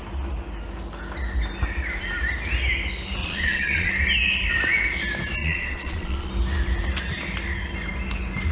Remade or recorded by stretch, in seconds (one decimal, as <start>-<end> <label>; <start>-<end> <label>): 0.0-3.2 recorded; 3.2-3.9 remade; 3.9-5.4 recorded; 5.4-6.3 remade; 6.3-8.5 recorded